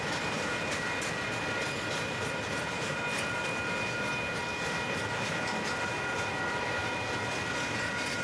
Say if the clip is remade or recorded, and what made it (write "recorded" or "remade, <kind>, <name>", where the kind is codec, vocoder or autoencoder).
recorded